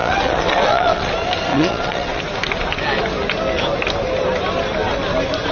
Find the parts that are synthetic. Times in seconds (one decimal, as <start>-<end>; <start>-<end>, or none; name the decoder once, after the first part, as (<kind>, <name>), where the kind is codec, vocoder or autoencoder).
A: 0.0-1.1 (vocoder, WaveNeXt); 1.5-2.2

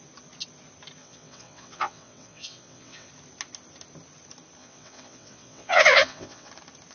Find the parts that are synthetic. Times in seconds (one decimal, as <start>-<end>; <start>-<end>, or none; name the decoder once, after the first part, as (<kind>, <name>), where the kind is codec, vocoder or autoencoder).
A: 1.0-3.1 (vocoder, WaveNeXt); 4.6-6.5

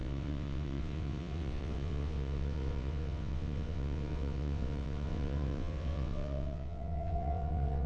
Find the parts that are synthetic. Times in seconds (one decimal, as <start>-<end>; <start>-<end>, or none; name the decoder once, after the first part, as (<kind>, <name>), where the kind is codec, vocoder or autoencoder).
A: 0.0-7.9 (vocoder, WaveNeXt)

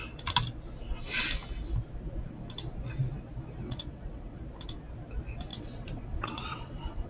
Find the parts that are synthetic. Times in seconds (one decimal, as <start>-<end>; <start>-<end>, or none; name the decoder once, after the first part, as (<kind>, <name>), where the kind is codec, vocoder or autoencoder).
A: 3.6-4.4 (vocoder, WaveNeXt); 5.5-7.1

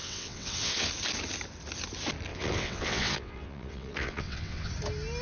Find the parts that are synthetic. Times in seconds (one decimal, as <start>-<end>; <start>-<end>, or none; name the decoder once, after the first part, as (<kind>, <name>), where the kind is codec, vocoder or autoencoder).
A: 0.0-0.9 (vocoder, WaveNeXt); 2.3-4.7

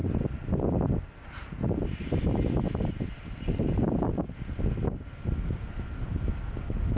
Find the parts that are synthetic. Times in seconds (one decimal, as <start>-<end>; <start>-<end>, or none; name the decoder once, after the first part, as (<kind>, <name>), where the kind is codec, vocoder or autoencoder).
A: none

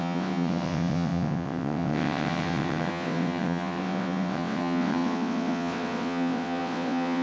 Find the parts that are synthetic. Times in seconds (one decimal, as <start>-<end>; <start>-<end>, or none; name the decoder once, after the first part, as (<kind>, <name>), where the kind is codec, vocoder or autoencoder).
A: 0.0-7.2 (vocoder, WaveNeXt)